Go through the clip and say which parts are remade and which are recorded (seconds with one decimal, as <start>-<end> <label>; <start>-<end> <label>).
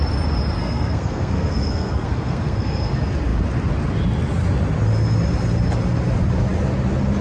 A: 0.0-0.6 recorded; 0.6-2.9 remade; 2.9-7.2 recorded